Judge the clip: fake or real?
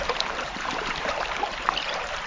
fake